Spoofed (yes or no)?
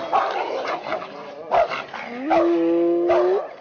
no